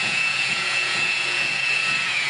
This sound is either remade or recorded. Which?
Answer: remade